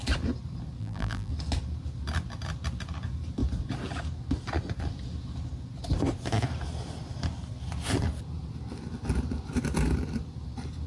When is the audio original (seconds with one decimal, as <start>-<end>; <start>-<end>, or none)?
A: 0.0-0.8; 1.3-10.9